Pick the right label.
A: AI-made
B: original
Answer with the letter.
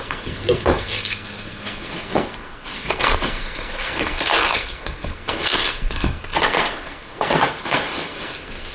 A